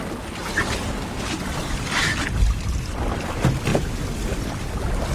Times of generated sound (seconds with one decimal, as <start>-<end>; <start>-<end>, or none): 0.4-3.2

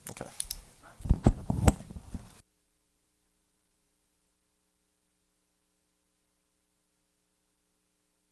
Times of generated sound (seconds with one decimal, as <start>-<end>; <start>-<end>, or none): 1.4-4.3